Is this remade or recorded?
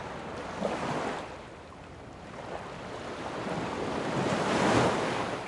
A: recorded